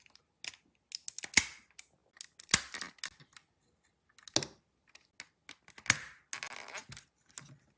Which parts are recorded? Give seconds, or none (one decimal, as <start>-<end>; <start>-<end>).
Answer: 0.0-7.8